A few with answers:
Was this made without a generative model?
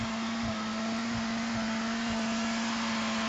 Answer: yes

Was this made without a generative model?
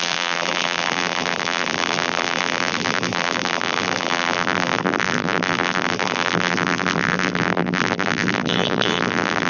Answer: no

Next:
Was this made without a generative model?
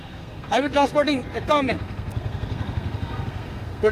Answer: no